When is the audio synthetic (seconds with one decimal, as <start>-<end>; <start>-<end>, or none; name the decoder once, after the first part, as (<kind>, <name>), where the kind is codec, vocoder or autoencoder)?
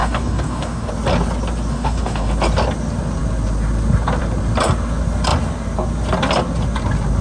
0.0-0.9 (codec, DAC); 1.7-2.3